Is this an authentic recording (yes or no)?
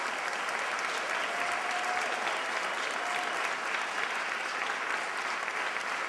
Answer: yes